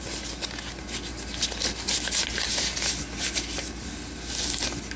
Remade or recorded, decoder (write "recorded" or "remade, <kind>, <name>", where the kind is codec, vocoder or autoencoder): recorded